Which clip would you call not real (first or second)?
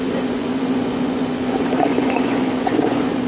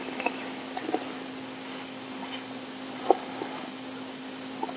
first